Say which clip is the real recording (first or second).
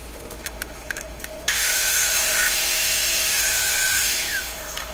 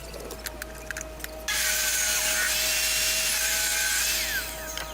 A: second